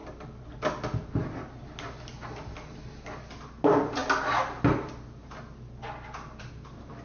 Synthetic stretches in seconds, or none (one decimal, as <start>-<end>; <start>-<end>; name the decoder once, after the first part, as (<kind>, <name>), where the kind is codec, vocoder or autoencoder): none